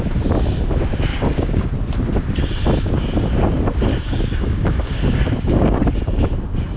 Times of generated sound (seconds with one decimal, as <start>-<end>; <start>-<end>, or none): 1.1-1.7; 3.9-5.8